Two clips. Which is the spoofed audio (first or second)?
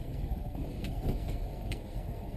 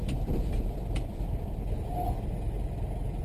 first